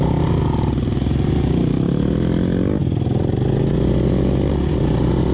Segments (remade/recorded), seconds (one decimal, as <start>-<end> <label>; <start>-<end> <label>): 0.0-5.3 recorded